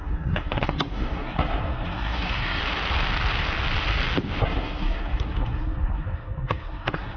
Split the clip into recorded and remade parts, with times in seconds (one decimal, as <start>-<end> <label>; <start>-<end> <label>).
0.0-2.6 remade; 2.6-4.4 recorded; 4.4-7.2 remade